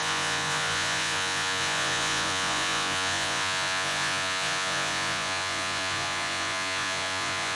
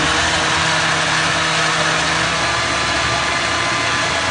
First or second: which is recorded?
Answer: second